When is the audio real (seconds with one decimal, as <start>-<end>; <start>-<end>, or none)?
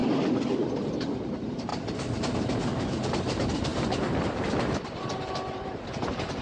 0.0-0.9; 1.7-2.6